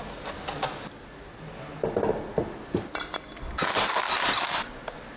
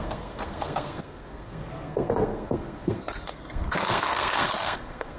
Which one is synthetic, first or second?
second